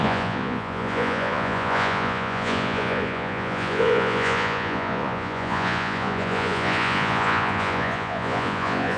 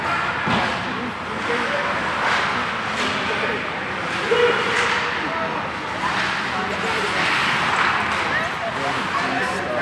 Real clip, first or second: second